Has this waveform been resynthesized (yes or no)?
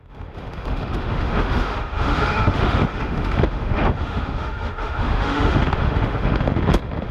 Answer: yes